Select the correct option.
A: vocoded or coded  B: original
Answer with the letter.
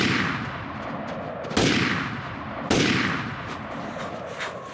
B